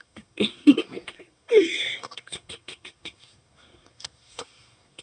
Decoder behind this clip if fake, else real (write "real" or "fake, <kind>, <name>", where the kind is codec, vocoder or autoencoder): fake, codec, SNAC